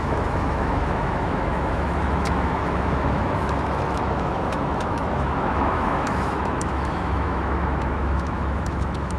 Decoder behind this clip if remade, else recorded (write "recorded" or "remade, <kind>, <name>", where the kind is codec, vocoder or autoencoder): remade, autoencoder, DAC-VAE